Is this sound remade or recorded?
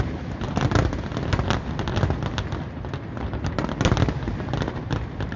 recorded